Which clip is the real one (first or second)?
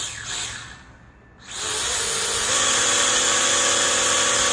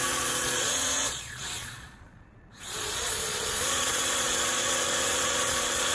first